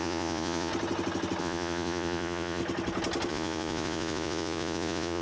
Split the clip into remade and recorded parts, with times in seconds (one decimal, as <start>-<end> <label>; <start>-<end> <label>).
0.0-0.7 remade; 0.7-1.4 recorded; 1.4-2.6 remade; 2.6-3.3 recorded; 3.3-5.2 remade

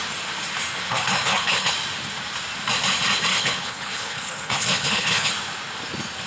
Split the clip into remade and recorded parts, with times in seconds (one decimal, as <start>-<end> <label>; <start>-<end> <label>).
0.0-0.8 recorded; 0.8-1.7 remade; 1.7-3.3 recorded; 3.3-5.3 remade; 5.3-6.3 recorded

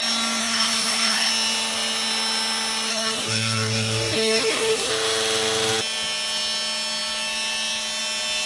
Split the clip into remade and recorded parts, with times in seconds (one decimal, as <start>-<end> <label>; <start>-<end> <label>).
0.0-0.4 recorded; 0.4-1.3 remade; 1.3-2.9 recorded; 2.9-4.9 remade; 4.9-8.5 recorded

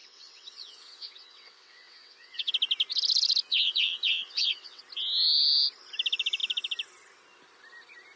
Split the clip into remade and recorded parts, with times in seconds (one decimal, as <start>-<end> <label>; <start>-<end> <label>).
0.0-2.5 remade; 2.5-3.5 recorded; 3.5-4.8 remade; 4.8-8.2 recorded

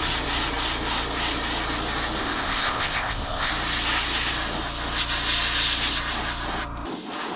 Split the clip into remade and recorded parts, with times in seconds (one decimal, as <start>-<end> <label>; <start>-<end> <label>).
0.0-2.2 recorded; 2.2-3.5 remade; 3.5-7.4 recorded

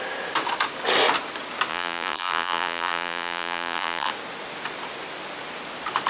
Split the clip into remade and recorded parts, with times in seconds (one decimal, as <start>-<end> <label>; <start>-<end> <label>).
0.0-1.7 recorded; 1.7-4.1 remade; 4.1-6.1 recorded

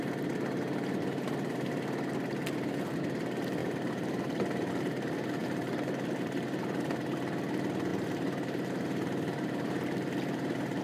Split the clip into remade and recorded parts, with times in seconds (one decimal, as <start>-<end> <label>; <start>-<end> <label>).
0.0-3.6 recorded; 3.6-4.7 remade; 4.7-5.4 recorded; 5.4-7.0 remade; 7.0-7.9 recorded; 7.9-10.8 remade

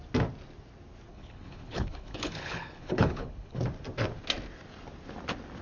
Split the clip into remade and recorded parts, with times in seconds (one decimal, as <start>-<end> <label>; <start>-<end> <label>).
0.0-1.1 recorded; 1.1-3.6 remade; 3.6-5.6 recorded